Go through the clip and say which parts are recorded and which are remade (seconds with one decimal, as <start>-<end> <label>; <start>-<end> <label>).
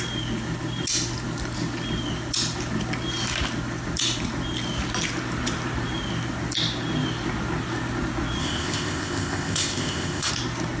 0.0-8.4 recorded; 8.4-10.3 remade; 10.3-10.8 recorded